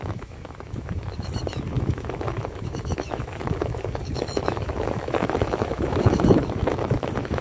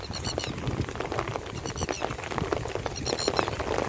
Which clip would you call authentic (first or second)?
second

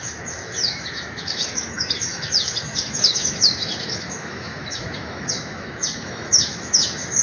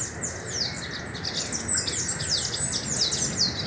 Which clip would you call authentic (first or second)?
second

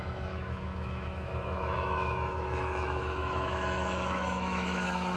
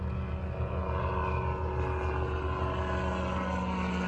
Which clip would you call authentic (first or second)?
second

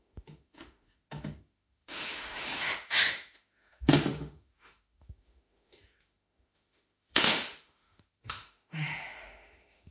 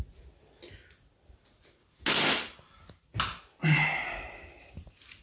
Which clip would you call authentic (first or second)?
second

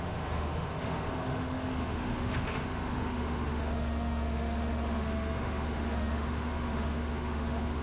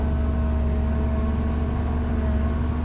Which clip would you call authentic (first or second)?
second